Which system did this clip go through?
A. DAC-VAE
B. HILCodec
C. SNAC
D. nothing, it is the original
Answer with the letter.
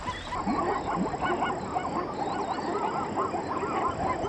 D